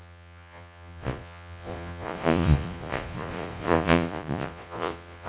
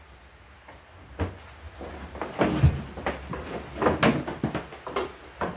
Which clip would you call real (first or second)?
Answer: second